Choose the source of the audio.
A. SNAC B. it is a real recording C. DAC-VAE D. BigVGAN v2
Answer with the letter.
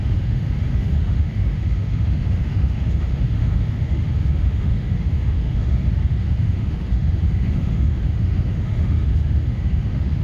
C